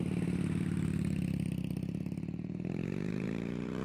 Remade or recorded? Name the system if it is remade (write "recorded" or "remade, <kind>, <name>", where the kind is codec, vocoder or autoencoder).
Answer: remade, vocoder, BigVGAN v2